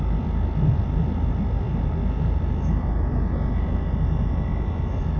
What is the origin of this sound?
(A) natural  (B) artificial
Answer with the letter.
A